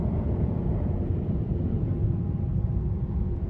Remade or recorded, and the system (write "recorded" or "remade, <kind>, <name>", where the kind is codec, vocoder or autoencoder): remade, vocoder, Vocos